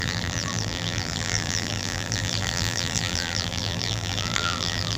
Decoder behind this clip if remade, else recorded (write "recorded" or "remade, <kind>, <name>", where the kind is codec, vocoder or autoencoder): remade, vocoder, BigVGAN v2